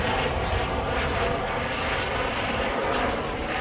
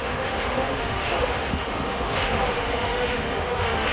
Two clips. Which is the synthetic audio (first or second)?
second